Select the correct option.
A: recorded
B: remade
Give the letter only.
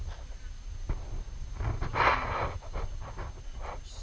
A